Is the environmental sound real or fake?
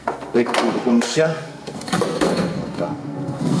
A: fake